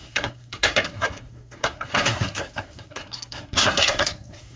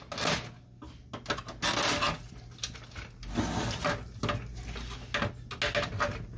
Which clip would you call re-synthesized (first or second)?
first